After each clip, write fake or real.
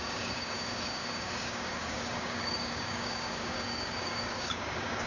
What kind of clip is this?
fake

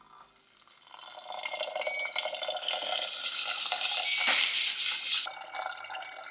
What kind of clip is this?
real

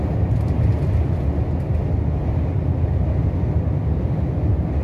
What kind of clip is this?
real